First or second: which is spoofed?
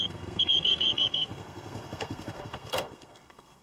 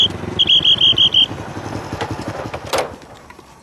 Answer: first